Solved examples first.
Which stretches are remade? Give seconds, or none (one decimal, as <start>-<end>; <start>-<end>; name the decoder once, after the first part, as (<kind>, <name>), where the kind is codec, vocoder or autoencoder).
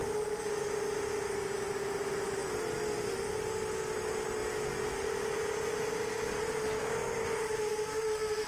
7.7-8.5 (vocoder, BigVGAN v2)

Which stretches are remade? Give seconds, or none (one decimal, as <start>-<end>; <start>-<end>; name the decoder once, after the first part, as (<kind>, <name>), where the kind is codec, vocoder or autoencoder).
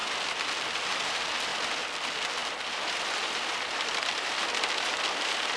2.4-5.6 (vocoder, BigVGAN v2)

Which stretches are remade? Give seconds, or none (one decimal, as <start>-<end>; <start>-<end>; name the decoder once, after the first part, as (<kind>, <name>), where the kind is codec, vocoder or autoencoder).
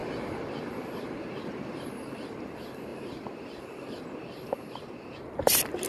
2.9-4.0 (vocoder, BigVGAN v2)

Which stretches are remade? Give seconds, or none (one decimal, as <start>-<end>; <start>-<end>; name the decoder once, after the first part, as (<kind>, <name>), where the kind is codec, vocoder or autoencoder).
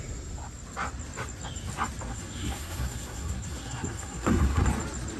2.1-4.6 (codec, SNAC)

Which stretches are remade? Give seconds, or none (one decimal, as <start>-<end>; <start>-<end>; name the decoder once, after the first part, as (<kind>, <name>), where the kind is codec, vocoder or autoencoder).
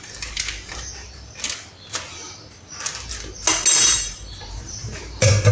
0.0-0.9 (vocoder, BigVGAN v2); 3.7-5.5